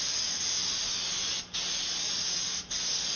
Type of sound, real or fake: real